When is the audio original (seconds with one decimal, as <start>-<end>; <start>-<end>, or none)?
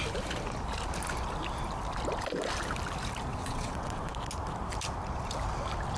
0.0-3.3; 4.1-6.0